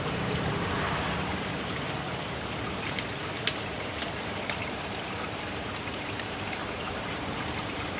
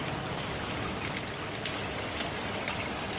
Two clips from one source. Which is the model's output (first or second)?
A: first